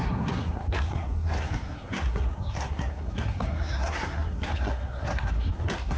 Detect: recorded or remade remade